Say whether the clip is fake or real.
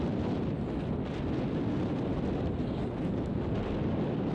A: real